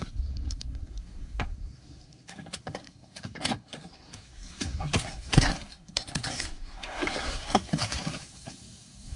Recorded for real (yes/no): no